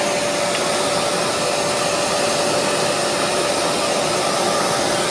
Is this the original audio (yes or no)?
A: yes